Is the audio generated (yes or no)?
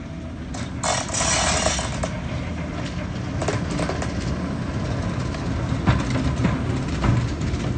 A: no